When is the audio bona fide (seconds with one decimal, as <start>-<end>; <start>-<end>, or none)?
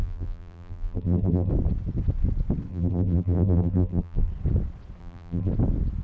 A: 1.5-2.7; 4.3-5.0; 5.5-6.0